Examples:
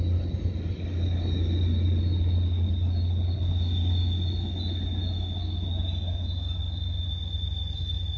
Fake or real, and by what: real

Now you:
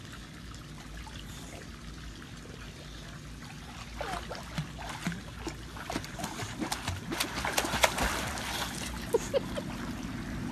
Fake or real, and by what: real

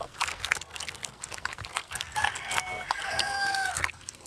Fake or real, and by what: fake, codec, SNAC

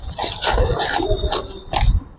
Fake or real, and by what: real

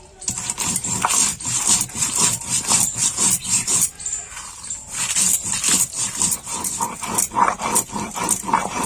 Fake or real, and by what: real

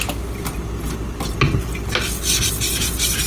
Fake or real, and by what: real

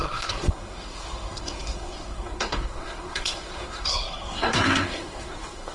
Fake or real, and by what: fake, codec, SNAC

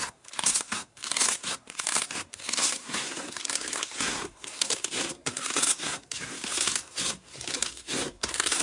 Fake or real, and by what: fake, codec, SNAC